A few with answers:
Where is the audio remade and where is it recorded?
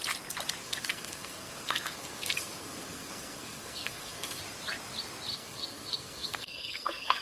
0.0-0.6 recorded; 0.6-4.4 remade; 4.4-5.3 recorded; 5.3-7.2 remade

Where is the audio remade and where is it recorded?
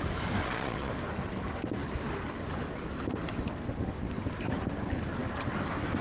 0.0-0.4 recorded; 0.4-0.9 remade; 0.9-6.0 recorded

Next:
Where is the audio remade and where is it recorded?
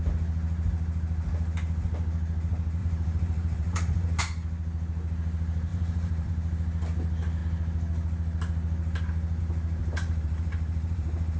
0.0-2.8 recorded; 2.8-4.2 remade; 4.2-5.7 recorded; 5.7-6.3 remade; 6.3-9.8 recorded; 9.8-11.4 remade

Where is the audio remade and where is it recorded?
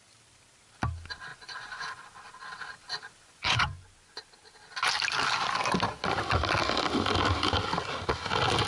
0.0-1.3 recorded; 1.3-2.0 remade; 2.0-3.2 recorded; 3.2-4.2 remade; 4.2-8.7 recorded